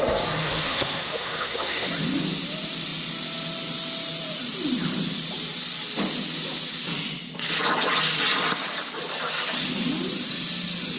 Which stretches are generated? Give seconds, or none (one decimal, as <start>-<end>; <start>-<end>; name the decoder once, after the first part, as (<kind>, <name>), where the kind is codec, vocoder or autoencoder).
0.4-1.9 (autoencoder, DAC-VAE)